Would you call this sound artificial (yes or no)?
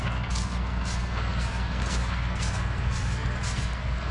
yes